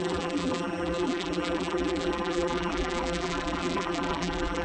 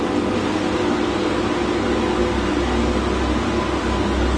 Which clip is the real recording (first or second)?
second